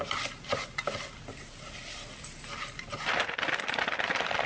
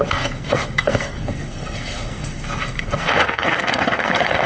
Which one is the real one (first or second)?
first